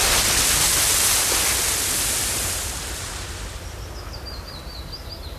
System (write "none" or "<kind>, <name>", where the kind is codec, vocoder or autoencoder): none